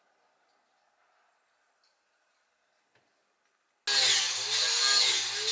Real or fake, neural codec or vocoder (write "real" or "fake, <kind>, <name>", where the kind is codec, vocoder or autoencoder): real